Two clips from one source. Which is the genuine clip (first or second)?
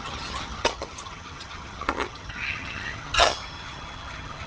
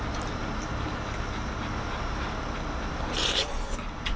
second